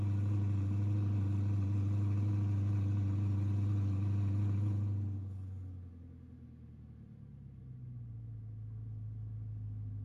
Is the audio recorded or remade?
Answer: recorded